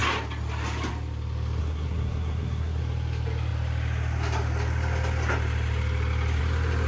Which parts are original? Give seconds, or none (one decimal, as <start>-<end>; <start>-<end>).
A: 0.0-1.6; 2.8-6.9